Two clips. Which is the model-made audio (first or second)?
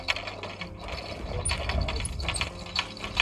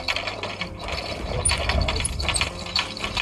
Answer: second